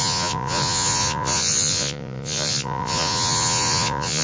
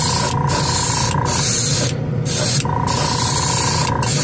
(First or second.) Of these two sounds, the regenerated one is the first